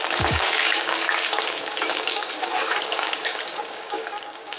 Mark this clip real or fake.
fake